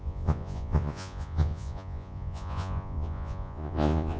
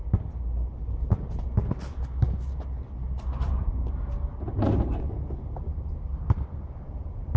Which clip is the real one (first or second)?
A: second